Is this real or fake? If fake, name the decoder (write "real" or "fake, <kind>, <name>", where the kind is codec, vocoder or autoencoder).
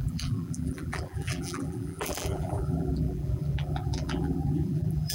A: fake, vocoder, BigVGAN v2